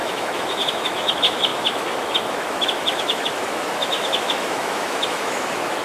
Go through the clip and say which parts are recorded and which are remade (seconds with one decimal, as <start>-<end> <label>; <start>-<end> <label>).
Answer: 0.0-5.8 remade